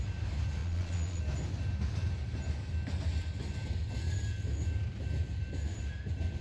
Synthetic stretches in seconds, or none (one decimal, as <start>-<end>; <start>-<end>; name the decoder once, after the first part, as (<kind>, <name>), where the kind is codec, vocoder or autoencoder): 0.6-1.2 (vocoder, Vocos)